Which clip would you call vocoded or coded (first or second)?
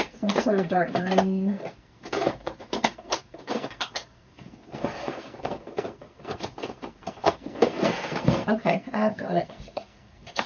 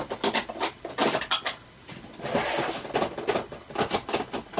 first